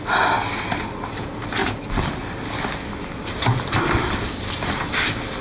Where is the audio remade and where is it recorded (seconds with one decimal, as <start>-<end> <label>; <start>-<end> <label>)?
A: 0.0-5.4 recorded